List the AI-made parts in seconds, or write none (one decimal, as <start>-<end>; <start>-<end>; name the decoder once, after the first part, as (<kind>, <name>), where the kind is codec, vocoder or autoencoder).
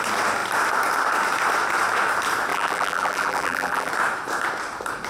2.5-3.9 (vocoder, BigVGAN v2)